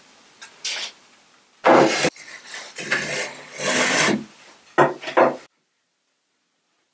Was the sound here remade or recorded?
recorded